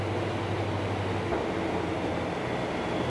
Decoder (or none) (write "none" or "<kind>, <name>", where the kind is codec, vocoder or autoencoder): none